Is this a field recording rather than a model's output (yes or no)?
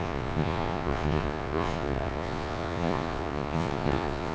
no